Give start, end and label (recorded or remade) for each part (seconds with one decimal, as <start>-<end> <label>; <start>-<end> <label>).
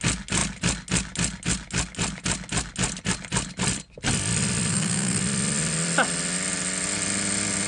0.0-4.7 recorded; 4.7-5.2 remade; 5.2-7.7 recorded